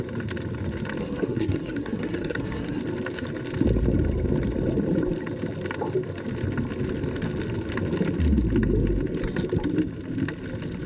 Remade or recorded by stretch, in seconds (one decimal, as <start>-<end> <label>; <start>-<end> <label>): 0.0-1.0 recorded; 1.0-2.8 remade; 2.8-10.9 recorded